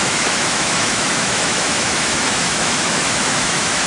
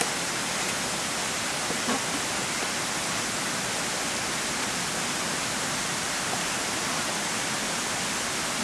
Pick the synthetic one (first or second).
first